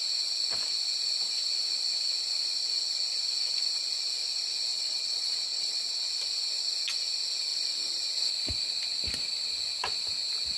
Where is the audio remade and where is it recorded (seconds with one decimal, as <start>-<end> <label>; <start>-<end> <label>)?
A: 0.0-4.7 recorded; 4.7-6.1 remade; 6.1-10.6 recorded